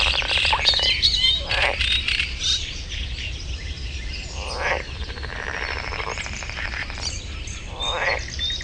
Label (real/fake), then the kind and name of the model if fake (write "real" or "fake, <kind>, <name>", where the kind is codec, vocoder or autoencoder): fake, vocoder, BigVGAN v2